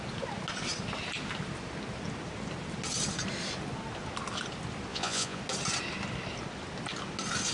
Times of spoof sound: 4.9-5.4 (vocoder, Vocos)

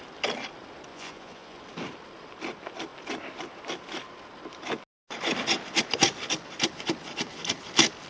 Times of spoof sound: 0.9-1.6 (vocoder, Vocos)

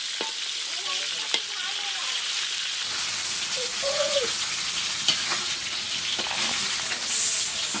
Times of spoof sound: 3.7-4.3 (vocoder, Vocos)

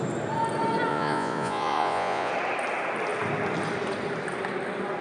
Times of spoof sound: 0.9-2.3 (vocoder, Vocos)

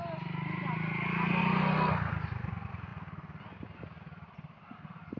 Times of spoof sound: none